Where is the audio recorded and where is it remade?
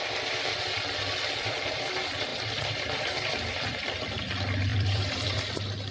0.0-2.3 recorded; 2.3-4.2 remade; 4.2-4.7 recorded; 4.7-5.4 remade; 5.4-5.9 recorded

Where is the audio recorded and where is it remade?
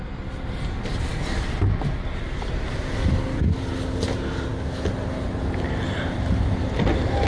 0.0-7.3 recorded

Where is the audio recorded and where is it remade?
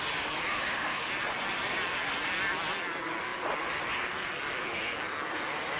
0.0-0.5 recorded; 0.5-1.1 remade; 1.1-5.8 recorded